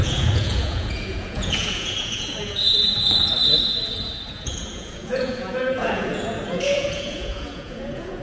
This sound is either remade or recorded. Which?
remade